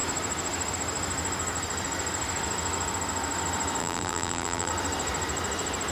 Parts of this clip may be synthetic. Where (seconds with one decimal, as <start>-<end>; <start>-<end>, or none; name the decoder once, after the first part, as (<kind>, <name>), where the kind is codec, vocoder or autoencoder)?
3.8-4.7 (vocoder, BigVGAN v2)